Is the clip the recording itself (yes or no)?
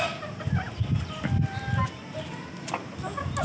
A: yes